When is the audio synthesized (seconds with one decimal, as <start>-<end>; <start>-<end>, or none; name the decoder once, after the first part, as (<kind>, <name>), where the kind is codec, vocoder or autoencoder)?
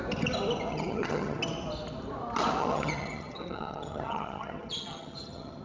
0.7-1.4 (vocoder, HiFi-GAN); 2.6-5.6